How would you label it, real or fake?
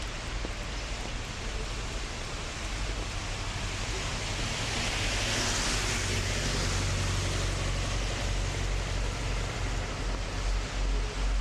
real